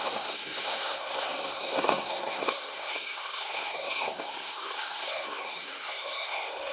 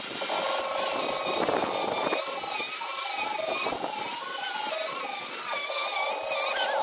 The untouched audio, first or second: second